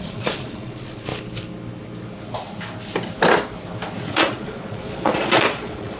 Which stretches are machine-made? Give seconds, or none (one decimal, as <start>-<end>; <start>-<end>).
0.0-1.1; 4.0-6.0